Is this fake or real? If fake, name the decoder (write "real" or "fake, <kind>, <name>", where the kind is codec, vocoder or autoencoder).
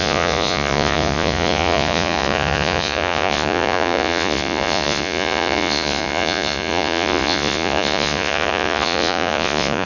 fake, vocoder, Vocos